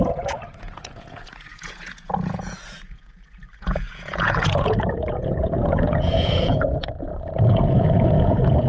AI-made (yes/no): yes